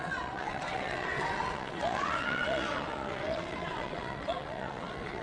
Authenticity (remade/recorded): remade